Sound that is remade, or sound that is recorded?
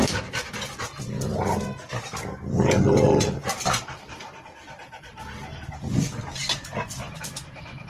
recorded